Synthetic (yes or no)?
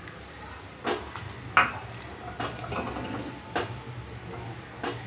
no